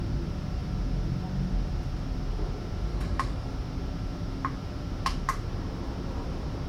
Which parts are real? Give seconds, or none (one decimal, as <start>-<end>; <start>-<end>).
0.0-2.9; 3.5-6.7